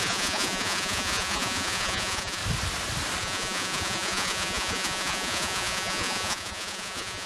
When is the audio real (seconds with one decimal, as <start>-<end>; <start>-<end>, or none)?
2.4-3.2